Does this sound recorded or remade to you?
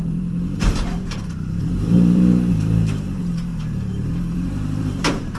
remade